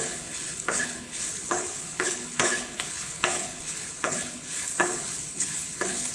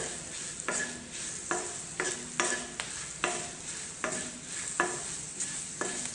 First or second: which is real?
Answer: second